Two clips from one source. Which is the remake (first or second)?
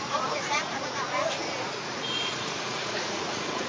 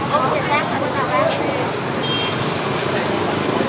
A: first